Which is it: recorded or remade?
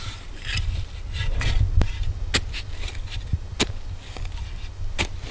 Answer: recorded